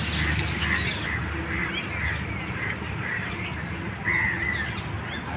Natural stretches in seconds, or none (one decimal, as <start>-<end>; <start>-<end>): 0.0-5.4

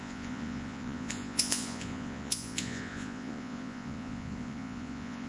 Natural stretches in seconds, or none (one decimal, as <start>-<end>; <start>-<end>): none

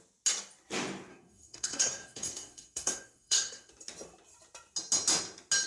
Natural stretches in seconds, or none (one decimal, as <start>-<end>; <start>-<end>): 0.0-1.1; 3.7-5.7

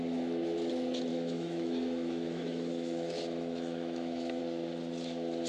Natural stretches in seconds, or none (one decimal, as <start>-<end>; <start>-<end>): 0.0-1.1; 4.4-5.5